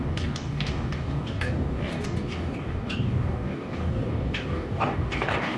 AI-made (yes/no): yes